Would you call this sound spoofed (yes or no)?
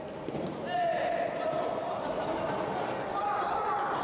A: no